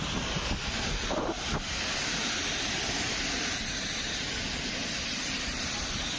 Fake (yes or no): no